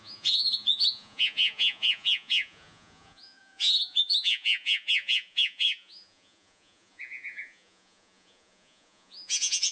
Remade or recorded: remade